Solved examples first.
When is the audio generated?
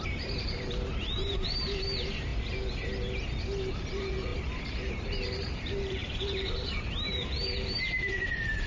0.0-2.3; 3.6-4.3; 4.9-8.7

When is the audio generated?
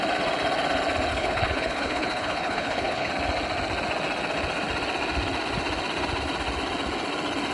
1.1-3.1